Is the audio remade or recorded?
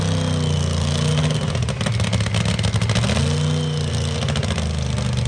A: recorded